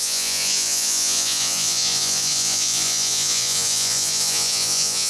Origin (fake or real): fake